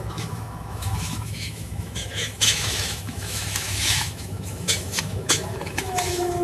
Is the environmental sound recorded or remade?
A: remade